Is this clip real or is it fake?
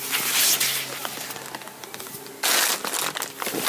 real